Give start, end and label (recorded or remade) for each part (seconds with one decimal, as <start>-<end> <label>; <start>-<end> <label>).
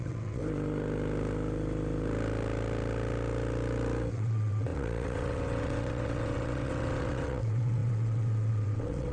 0.0-0.4 remade; 0.4-4.1 recorded; 4.1-9.1 remade